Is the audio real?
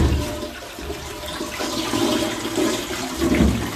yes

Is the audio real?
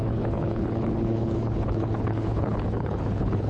no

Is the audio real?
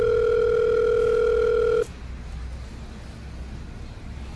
yes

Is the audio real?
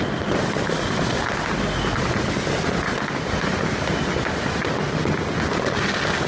yes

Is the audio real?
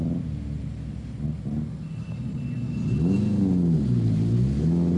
yes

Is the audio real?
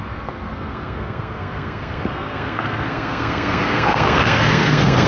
no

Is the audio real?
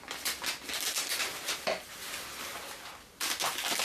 yes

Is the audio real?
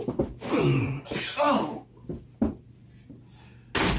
yes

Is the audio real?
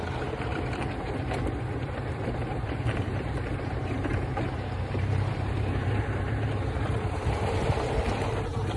no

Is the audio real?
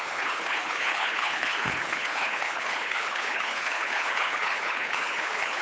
no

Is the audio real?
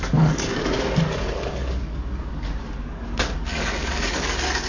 no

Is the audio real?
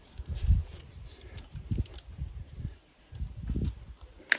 yes